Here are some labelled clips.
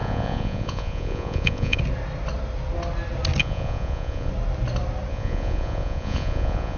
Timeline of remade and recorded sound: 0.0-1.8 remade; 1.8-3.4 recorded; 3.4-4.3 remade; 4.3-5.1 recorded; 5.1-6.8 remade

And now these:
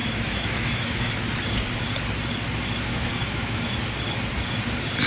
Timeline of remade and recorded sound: 0.0-1.1 remade; 1.1-2.9 recorded; 2.9-3.7 remade; 3.7-5.1 recorded

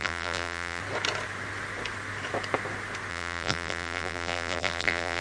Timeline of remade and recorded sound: 0.0-0.8 remade; 0.8-3.1 recorded; 3.1-5.2 remade

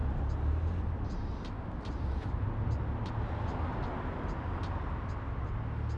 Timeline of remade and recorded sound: 0.0-6.0 recorded

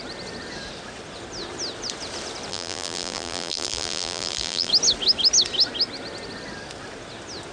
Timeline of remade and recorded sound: 0.0-2.5 recorded; 2.5-4.7 remade; 4.7-7.5 recorded

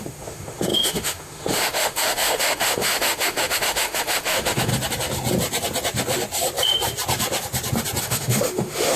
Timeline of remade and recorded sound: 0.0-4.7 remade; 4.7-8.0 recorded; 8.0-9.0 remade